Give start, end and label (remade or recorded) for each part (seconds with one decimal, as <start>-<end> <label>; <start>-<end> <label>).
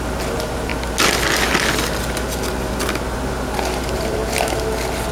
0.0-0.7 remade; 0.7-3.8 recorded; 3.8-4.2 remade; 4.2-5.1 recorded